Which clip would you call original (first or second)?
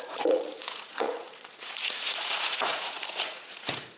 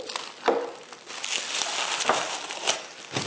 second